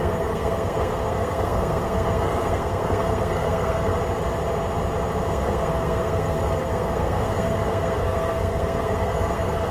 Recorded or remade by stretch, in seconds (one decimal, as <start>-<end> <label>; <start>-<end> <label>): 0.0-3.9 remade; 3.9-5.3 recorded; 5.3-9.7 remade